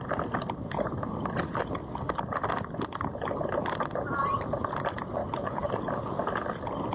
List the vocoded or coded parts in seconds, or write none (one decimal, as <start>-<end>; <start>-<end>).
5.2-5.7